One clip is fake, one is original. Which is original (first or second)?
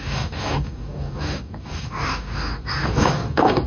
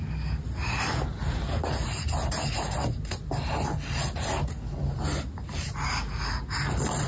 second